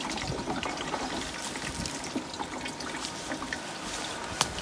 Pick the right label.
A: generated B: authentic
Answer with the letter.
B